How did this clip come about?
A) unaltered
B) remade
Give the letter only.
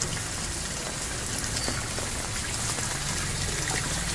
A